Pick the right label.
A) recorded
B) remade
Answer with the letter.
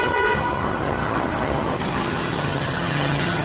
B